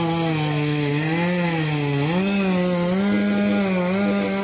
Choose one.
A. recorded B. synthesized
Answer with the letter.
A